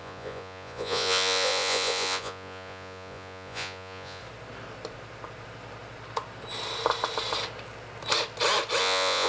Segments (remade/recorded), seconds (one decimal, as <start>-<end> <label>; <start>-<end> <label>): 0.0-4.2 remade; 4.2-8.8 recorded; 8.8-9.3 remade